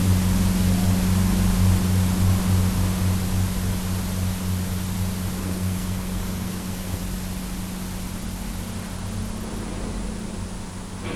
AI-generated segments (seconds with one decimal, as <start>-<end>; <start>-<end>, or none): 5.4-7.0